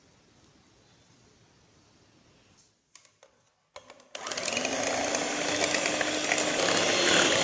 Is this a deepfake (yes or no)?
no